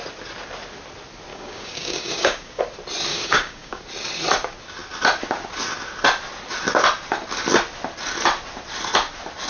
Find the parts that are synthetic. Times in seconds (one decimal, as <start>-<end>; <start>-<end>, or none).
1.3-2.6; 3.1-3.8